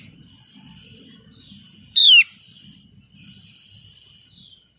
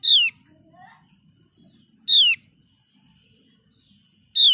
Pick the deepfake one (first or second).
first